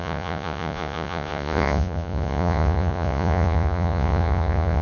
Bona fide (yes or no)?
no